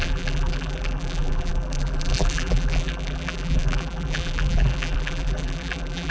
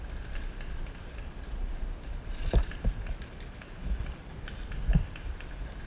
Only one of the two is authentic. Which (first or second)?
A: second